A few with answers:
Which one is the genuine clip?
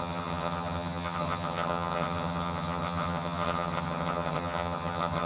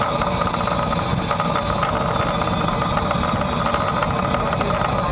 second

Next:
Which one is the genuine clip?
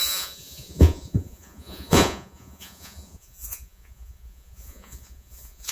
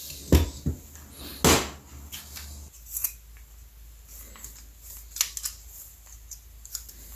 second